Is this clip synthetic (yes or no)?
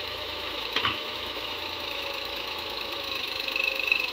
yes